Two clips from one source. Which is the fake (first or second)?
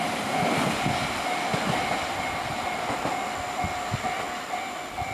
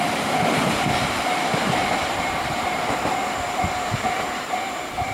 second